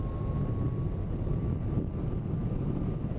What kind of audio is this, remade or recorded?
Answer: recorded